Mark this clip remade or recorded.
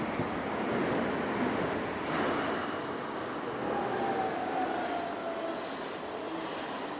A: recorded